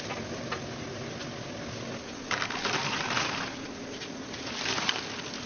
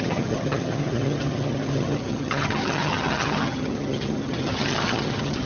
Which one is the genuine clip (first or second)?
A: first